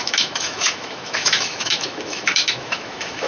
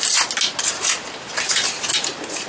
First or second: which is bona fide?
second